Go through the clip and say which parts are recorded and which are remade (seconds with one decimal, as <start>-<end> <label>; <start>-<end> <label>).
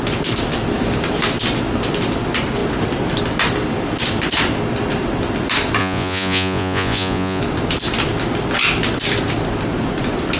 0.0-5.8 recorded; 5.8-7.4 remade; 7.4-10.4 recorded